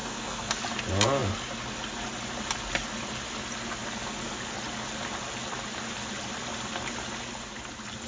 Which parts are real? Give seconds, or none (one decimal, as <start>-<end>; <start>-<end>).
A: 0.6-8.1